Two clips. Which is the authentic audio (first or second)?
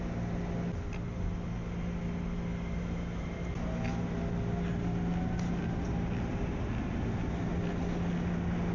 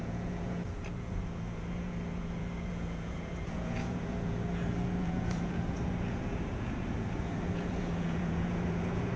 first